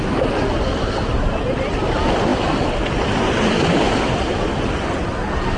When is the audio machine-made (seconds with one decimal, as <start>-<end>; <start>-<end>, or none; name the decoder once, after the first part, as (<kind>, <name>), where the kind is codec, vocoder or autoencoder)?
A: none